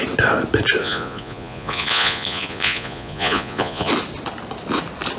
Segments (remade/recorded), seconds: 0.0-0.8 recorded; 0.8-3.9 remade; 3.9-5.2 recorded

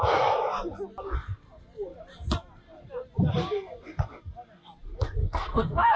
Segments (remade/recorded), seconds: 0.0-5.2 recorded; 5.2-6.0 remade